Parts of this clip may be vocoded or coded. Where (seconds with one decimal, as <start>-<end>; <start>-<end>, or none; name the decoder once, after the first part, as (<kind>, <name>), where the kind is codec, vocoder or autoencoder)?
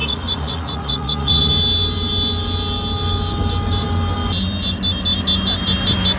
0.0-1.5 (vocoder, Vocos)